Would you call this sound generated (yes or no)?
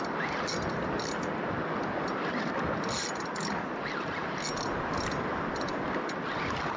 no